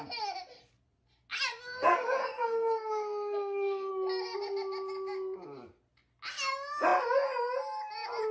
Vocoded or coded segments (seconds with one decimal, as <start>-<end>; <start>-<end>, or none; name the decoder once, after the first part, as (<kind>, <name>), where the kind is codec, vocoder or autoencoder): 1.6-3.9 (codec, SNAC)